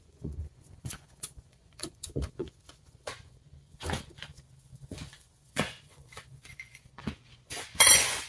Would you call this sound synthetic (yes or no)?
yes